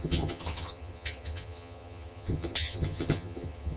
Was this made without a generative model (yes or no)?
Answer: no